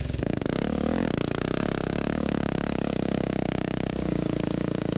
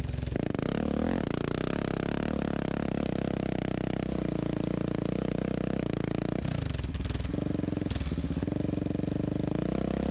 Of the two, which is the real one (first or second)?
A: second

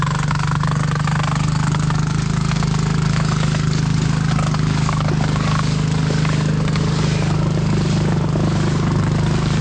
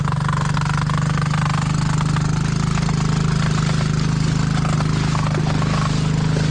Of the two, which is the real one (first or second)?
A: second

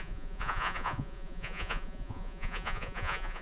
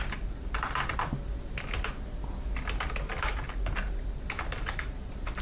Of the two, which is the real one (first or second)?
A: second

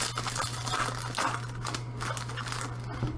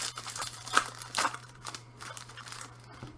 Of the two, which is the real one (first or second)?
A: first